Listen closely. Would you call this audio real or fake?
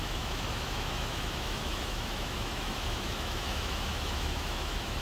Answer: fake